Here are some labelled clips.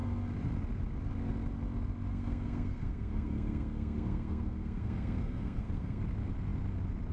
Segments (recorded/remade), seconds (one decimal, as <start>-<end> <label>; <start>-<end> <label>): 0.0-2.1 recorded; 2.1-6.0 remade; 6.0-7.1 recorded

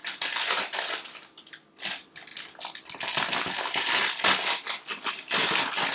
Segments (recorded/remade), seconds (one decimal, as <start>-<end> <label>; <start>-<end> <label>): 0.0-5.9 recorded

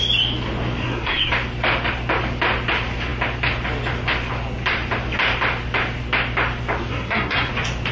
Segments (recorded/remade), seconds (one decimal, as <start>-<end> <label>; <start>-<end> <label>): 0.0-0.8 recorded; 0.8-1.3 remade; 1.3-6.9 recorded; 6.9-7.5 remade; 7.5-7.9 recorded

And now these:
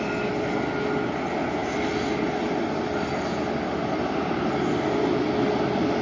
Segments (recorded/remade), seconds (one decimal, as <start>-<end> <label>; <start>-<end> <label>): 0.0-6.0 recorded

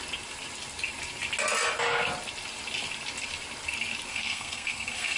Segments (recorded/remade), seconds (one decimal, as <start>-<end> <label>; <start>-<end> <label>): 0.0-4.1 recorded; 4.1-5.2 remade